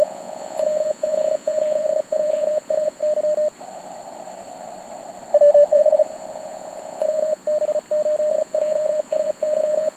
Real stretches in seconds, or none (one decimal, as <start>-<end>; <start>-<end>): 3.0-5.7; 7.4-8.3